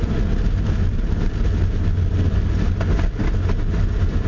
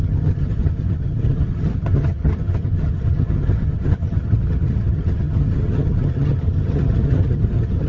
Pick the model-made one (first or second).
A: second